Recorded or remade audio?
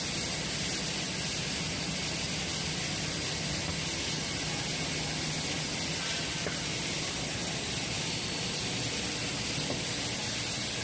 recorded